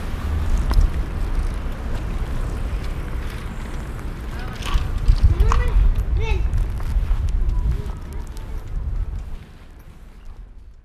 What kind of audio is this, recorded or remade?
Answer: recorded